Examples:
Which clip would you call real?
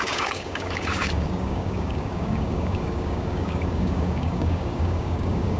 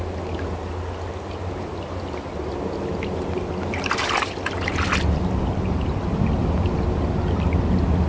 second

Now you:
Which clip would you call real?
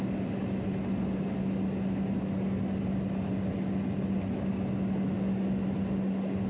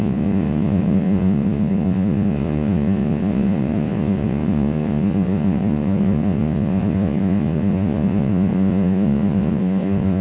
first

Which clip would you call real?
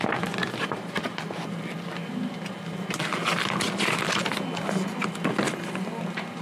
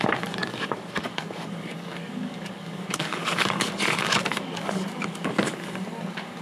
first